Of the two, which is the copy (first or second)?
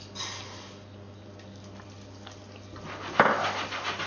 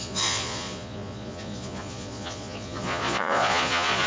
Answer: second